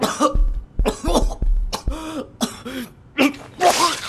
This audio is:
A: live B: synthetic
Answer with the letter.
A